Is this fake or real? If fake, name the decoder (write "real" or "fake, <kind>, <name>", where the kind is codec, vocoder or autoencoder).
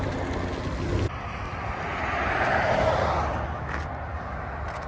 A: real